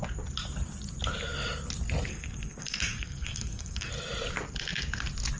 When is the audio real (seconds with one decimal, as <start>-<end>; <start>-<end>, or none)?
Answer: 0.0-2.1; 3.9-5.4